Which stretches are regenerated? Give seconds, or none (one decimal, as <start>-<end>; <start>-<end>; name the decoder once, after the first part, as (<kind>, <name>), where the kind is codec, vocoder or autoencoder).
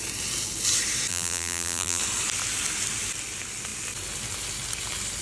1.1-2.0 (vocoder, BigVGAN v2)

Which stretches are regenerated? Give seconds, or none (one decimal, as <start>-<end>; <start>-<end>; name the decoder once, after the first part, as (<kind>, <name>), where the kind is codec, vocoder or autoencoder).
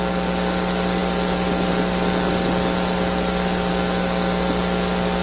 1.0-3.7 (vocoder, BigVGAN v2)